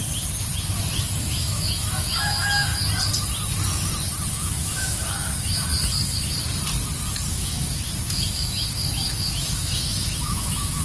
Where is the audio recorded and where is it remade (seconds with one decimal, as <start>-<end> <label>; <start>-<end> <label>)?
0.0-1.2 recorded; 1.2-2.7 remade; 2.7-4.3 recorded; 4.3-5.7 remade; 5.7-7.3 recorded; 7.3-10.8 remade